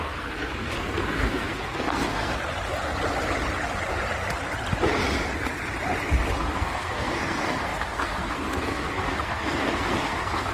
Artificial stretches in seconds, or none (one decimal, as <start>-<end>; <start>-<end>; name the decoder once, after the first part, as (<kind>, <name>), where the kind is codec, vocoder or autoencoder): 0.0-2.3 (codec, SNAC); 6.4-10.5